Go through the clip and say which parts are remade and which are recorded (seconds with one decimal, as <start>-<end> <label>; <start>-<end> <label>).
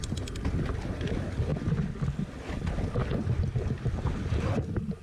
0.0-5.0 recorded